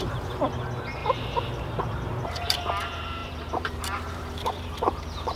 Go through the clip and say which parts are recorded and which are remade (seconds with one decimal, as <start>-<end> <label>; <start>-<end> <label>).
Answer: 0.0-1.0 recorded; 1.0-2.6 remade; 2.6-3.2 recorded; 3.2-5.4 remade